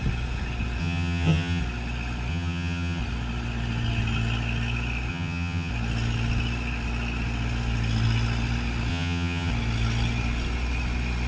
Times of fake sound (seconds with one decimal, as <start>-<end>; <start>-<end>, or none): 0.8-1.6; 2.3-3.0; 5.1-5.7; 8.9-9.5